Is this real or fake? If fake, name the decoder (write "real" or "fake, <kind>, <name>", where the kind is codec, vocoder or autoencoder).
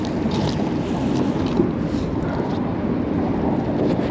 real